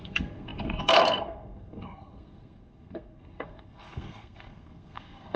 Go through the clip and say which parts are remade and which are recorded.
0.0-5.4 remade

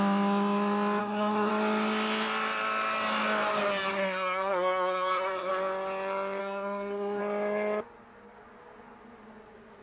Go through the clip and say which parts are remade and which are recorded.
0.0-1.0 recorded; 1.0-1.5 remade; 1.5-3.9 recorded; 3.9-5.5 remade; 5.5-6.4 recorded; 6.4-7.2 remade; 7.2-9.8 recorded

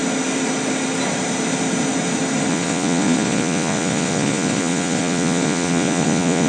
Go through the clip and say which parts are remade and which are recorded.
0.0-2.5 recorded; 2.5-6.5 remade

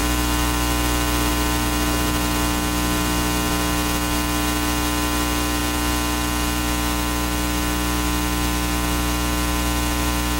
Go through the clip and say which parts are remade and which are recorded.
0.0-10.4 recorded